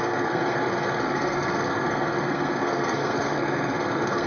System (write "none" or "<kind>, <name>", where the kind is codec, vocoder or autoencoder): codec, SNAC